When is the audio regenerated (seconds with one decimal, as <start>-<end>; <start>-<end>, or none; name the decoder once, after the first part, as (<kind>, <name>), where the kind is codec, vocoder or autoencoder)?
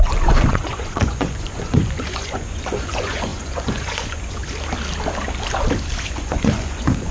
0.0-4.4 (vocoder, Vocos); 6.0-7.1